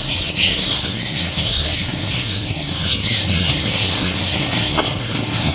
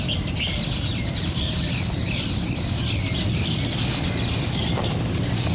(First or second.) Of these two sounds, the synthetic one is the first